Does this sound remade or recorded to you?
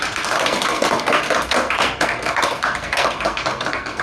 remade